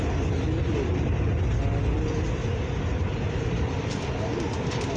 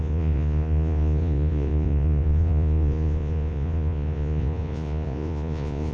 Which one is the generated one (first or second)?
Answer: second